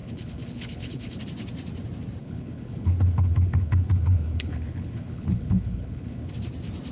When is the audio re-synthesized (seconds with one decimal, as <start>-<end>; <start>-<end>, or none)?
0.0-1.2; 2.2-6.3